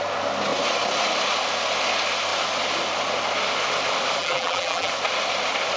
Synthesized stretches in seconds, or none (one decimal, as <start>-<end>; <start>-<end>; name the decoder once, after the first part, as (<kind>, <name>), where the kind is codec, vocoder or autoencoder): 4.2-4.9 (vocoder, BigVGAN v2)